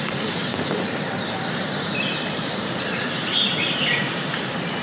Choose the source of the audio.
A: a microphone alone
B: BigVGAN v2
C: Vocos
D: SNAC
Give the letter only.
B